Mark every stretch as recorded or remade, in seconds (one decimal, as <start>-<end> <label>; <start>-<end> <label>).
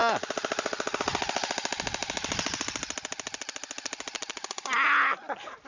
0.0-5.7 recorded